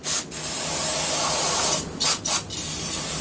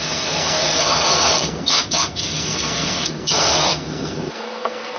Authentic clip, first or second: first